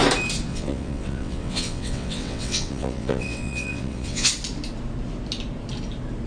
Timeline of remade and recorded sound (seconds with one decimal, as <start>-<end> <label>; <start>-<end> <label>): 0.0-0.5 recorded; 0.5-4.3 remade; 4.3-6.3 recorded